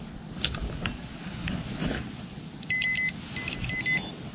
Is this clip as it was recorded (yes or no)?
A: yes